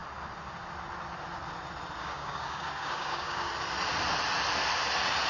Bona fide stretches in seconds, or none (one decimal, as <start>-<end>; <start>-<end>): 0.0-2.0; 3.5-5.3